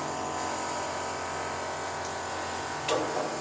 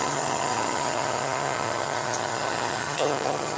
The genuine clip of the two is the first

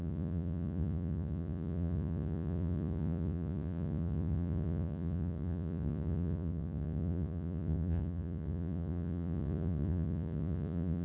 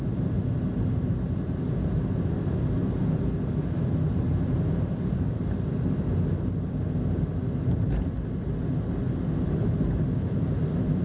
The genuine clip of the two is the second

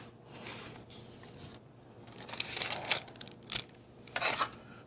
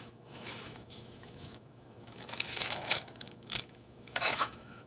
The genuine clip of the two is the first